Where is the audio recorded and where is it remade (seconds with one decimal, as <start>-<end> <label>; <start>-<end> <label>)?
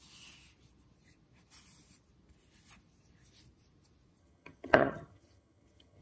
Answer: 0.0-4.2 recorded; 4.2-6.0 remade